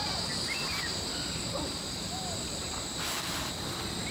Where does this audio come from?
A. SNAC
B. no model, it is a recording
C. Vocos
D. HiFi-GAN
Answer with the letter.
B